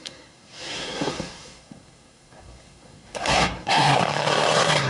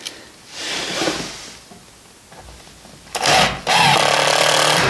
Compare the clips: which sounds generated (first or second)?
first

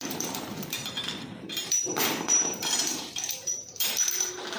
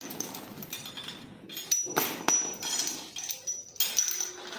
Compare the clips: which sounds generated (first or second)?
first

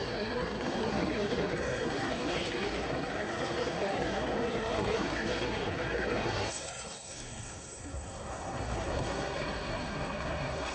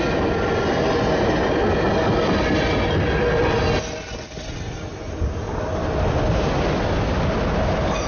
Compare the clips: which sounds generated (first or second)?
first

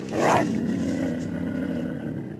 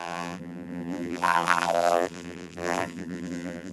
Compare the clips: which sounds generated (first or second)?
second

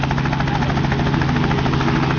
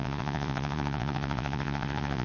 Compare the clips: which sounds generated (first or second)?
second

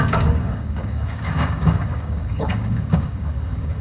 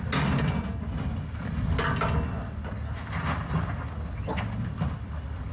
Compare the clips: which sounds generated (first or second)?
first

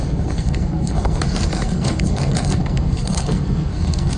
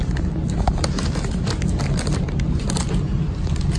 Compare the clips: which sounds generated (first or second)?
first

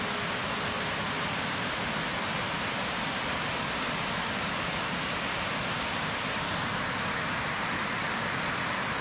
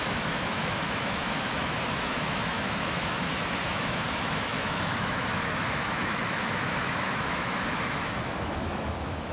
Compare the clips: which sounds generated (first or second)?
second